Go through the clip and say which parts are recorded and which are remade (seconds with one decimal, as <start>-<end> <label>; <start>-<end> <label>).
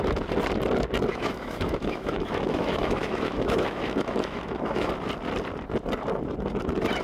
0.0-1.1 recorded; 1.1-4.9 remade; 4.9-7.0 recorded